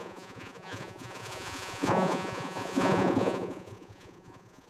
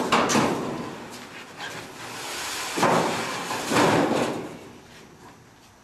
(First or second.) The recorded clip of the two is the second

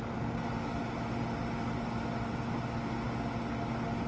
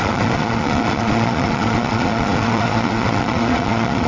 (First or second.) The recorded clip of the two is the first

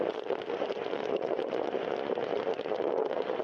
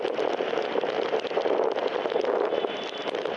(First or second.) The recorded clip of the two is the second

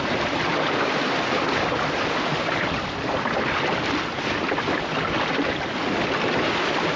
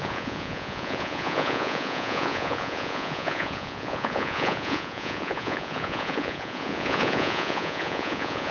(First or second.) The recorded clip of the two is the first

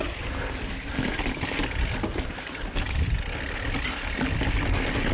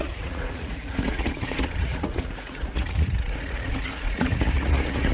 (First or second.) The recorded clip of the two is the first